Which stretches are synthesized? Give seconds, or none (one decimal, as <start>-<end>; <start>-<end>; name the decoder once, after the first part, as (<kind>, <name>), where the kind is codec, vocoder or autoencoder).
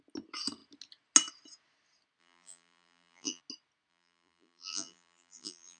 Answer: 2.2-3.4 (vocoder, BigVGAN v2); 3.9-5.8